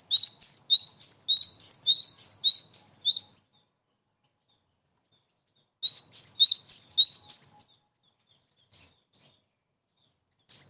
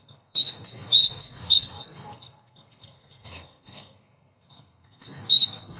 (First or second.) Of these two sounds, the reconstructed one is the second